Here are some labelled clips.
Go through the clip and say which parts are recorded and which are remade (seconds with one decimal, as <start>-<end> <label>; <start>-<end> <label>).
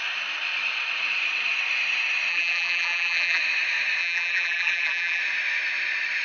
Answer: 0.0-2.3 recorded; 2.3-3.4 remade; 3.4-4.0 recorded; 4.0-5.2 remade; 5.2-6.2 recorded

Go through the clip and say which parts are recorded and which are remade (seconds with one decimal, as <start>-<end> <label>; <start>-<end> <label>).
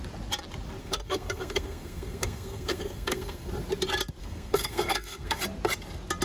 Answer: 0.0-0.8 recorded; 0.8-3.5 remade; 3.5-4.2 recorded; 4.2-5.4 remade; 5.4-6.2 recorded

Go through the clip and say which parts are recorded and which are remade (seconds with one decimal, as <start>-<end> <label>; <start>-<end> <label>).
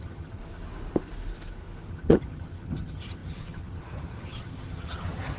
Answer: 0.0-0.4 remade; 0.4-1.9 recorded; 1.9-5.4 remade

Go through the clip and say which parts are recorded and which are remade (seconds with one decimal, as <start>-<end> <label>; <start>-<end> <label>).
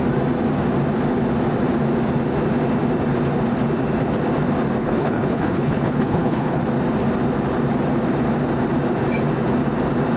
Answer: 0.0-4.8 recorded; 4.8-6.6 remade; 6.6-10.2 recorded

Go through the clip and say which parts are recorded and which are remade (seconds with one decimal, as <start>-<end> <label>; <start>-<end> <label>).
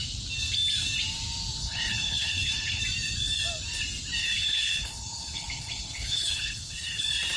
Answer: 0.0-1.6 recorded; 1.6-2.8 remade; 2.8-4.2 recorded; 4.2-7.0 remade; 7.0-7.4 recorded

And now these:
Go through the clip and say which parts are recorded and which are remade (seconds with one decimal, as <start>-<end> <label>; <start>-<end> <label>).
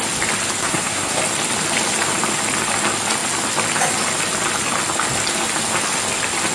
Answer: 0.0-0.6 recorded; 0.6-1.2 remade; 1.2-6.5 recorded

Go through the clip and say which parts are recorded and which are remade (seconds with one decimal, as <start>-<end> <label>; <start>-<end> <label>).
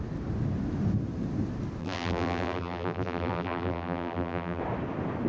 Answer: 0.0-1.8 recorded; 1.8-4.6 remade; 4.6-5.3 recorded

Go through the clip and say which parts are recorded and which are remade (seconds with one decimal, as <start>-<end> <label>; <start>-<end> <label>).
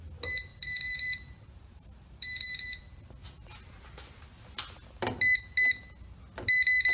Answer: 0.0-0.5 recorded; 0.5-2.8 remade; 2.8-6.9 recorded